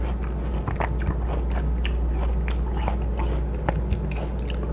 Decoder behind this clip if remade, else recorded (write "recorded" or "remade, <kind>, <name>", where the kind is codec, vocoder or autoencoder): recorded